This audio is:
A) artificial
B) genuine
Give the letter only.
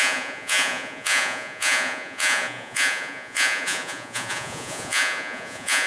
A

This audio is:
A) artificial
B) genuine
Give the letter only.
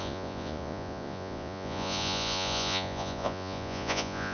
A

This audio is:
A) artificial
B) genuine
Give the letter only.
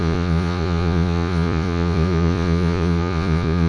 A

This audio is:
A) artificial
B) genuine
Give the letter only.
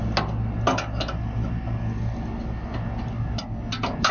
B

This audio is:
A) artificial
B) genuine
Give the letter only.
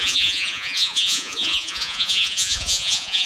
A